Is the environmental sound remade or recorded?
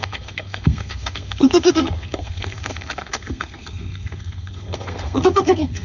remade